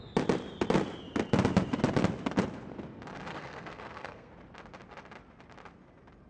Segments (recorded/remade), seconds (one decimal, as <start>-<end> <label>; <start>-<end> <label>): 0.0-3.3 recorded; 3.3-4.3 remade; 4.3-6.3 recorded

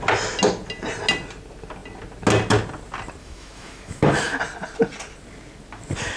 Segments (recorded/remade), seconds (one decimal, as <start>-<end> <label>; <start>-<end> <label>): 0.0-3.2 recorded; 3.2-4.4 remade; 4.4-6.2 recorded

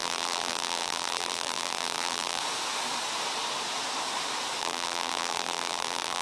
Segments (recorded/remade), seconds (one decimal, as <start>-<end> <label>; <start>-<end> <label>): 0.0-2.4 remade; 2.4-4.6 recorded; 4.6-6.2 remade

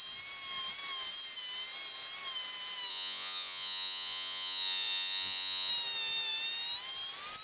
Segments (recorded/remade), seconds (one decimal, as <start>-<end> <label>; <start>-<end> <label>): 0.0-2.9 recorded; 2.9-5.7 remade; 5.7-7.4 recorded

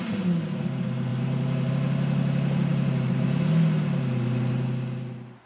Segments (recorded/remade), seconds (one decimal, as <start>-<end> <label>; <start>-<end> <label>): 0.0-1.1 recorded; 1.1-1.7 remade; 1.7-5.5 recorded

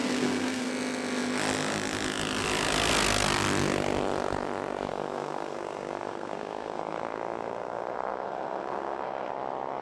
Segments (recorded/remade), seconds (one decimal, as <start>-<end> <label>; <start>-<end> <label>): 0.0-0.7 remade; 0.7-4.9 recorded; 4.9-9.3 remade; 9.3-9.8 recorded

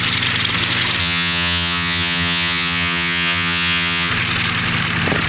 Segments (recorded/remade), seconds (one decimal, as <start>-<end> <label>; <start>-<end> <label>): 0.0-1.0 recorded; 1.0-4.1 remade; 4.1-5.3 recorded